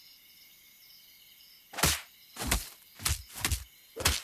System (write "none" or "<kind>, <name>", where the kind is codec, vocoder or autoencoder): none